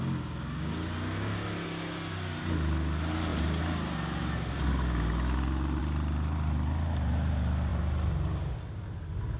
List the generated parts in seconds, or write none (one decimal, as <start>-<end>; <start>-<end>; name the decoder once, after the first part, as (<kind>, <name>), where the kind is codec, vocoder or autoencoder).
7.7-8.6 (vocoder, BigVGAN v2)